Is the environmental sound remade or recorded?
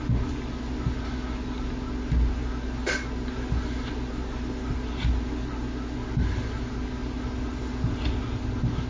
recorded